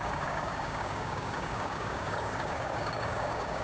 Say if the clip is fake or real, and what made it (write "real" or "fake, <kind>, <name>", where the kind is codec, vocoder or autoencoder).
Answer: fake, codec, DAC